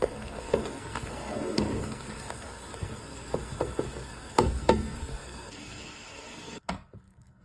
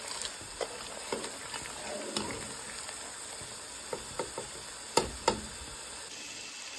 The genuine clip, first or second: second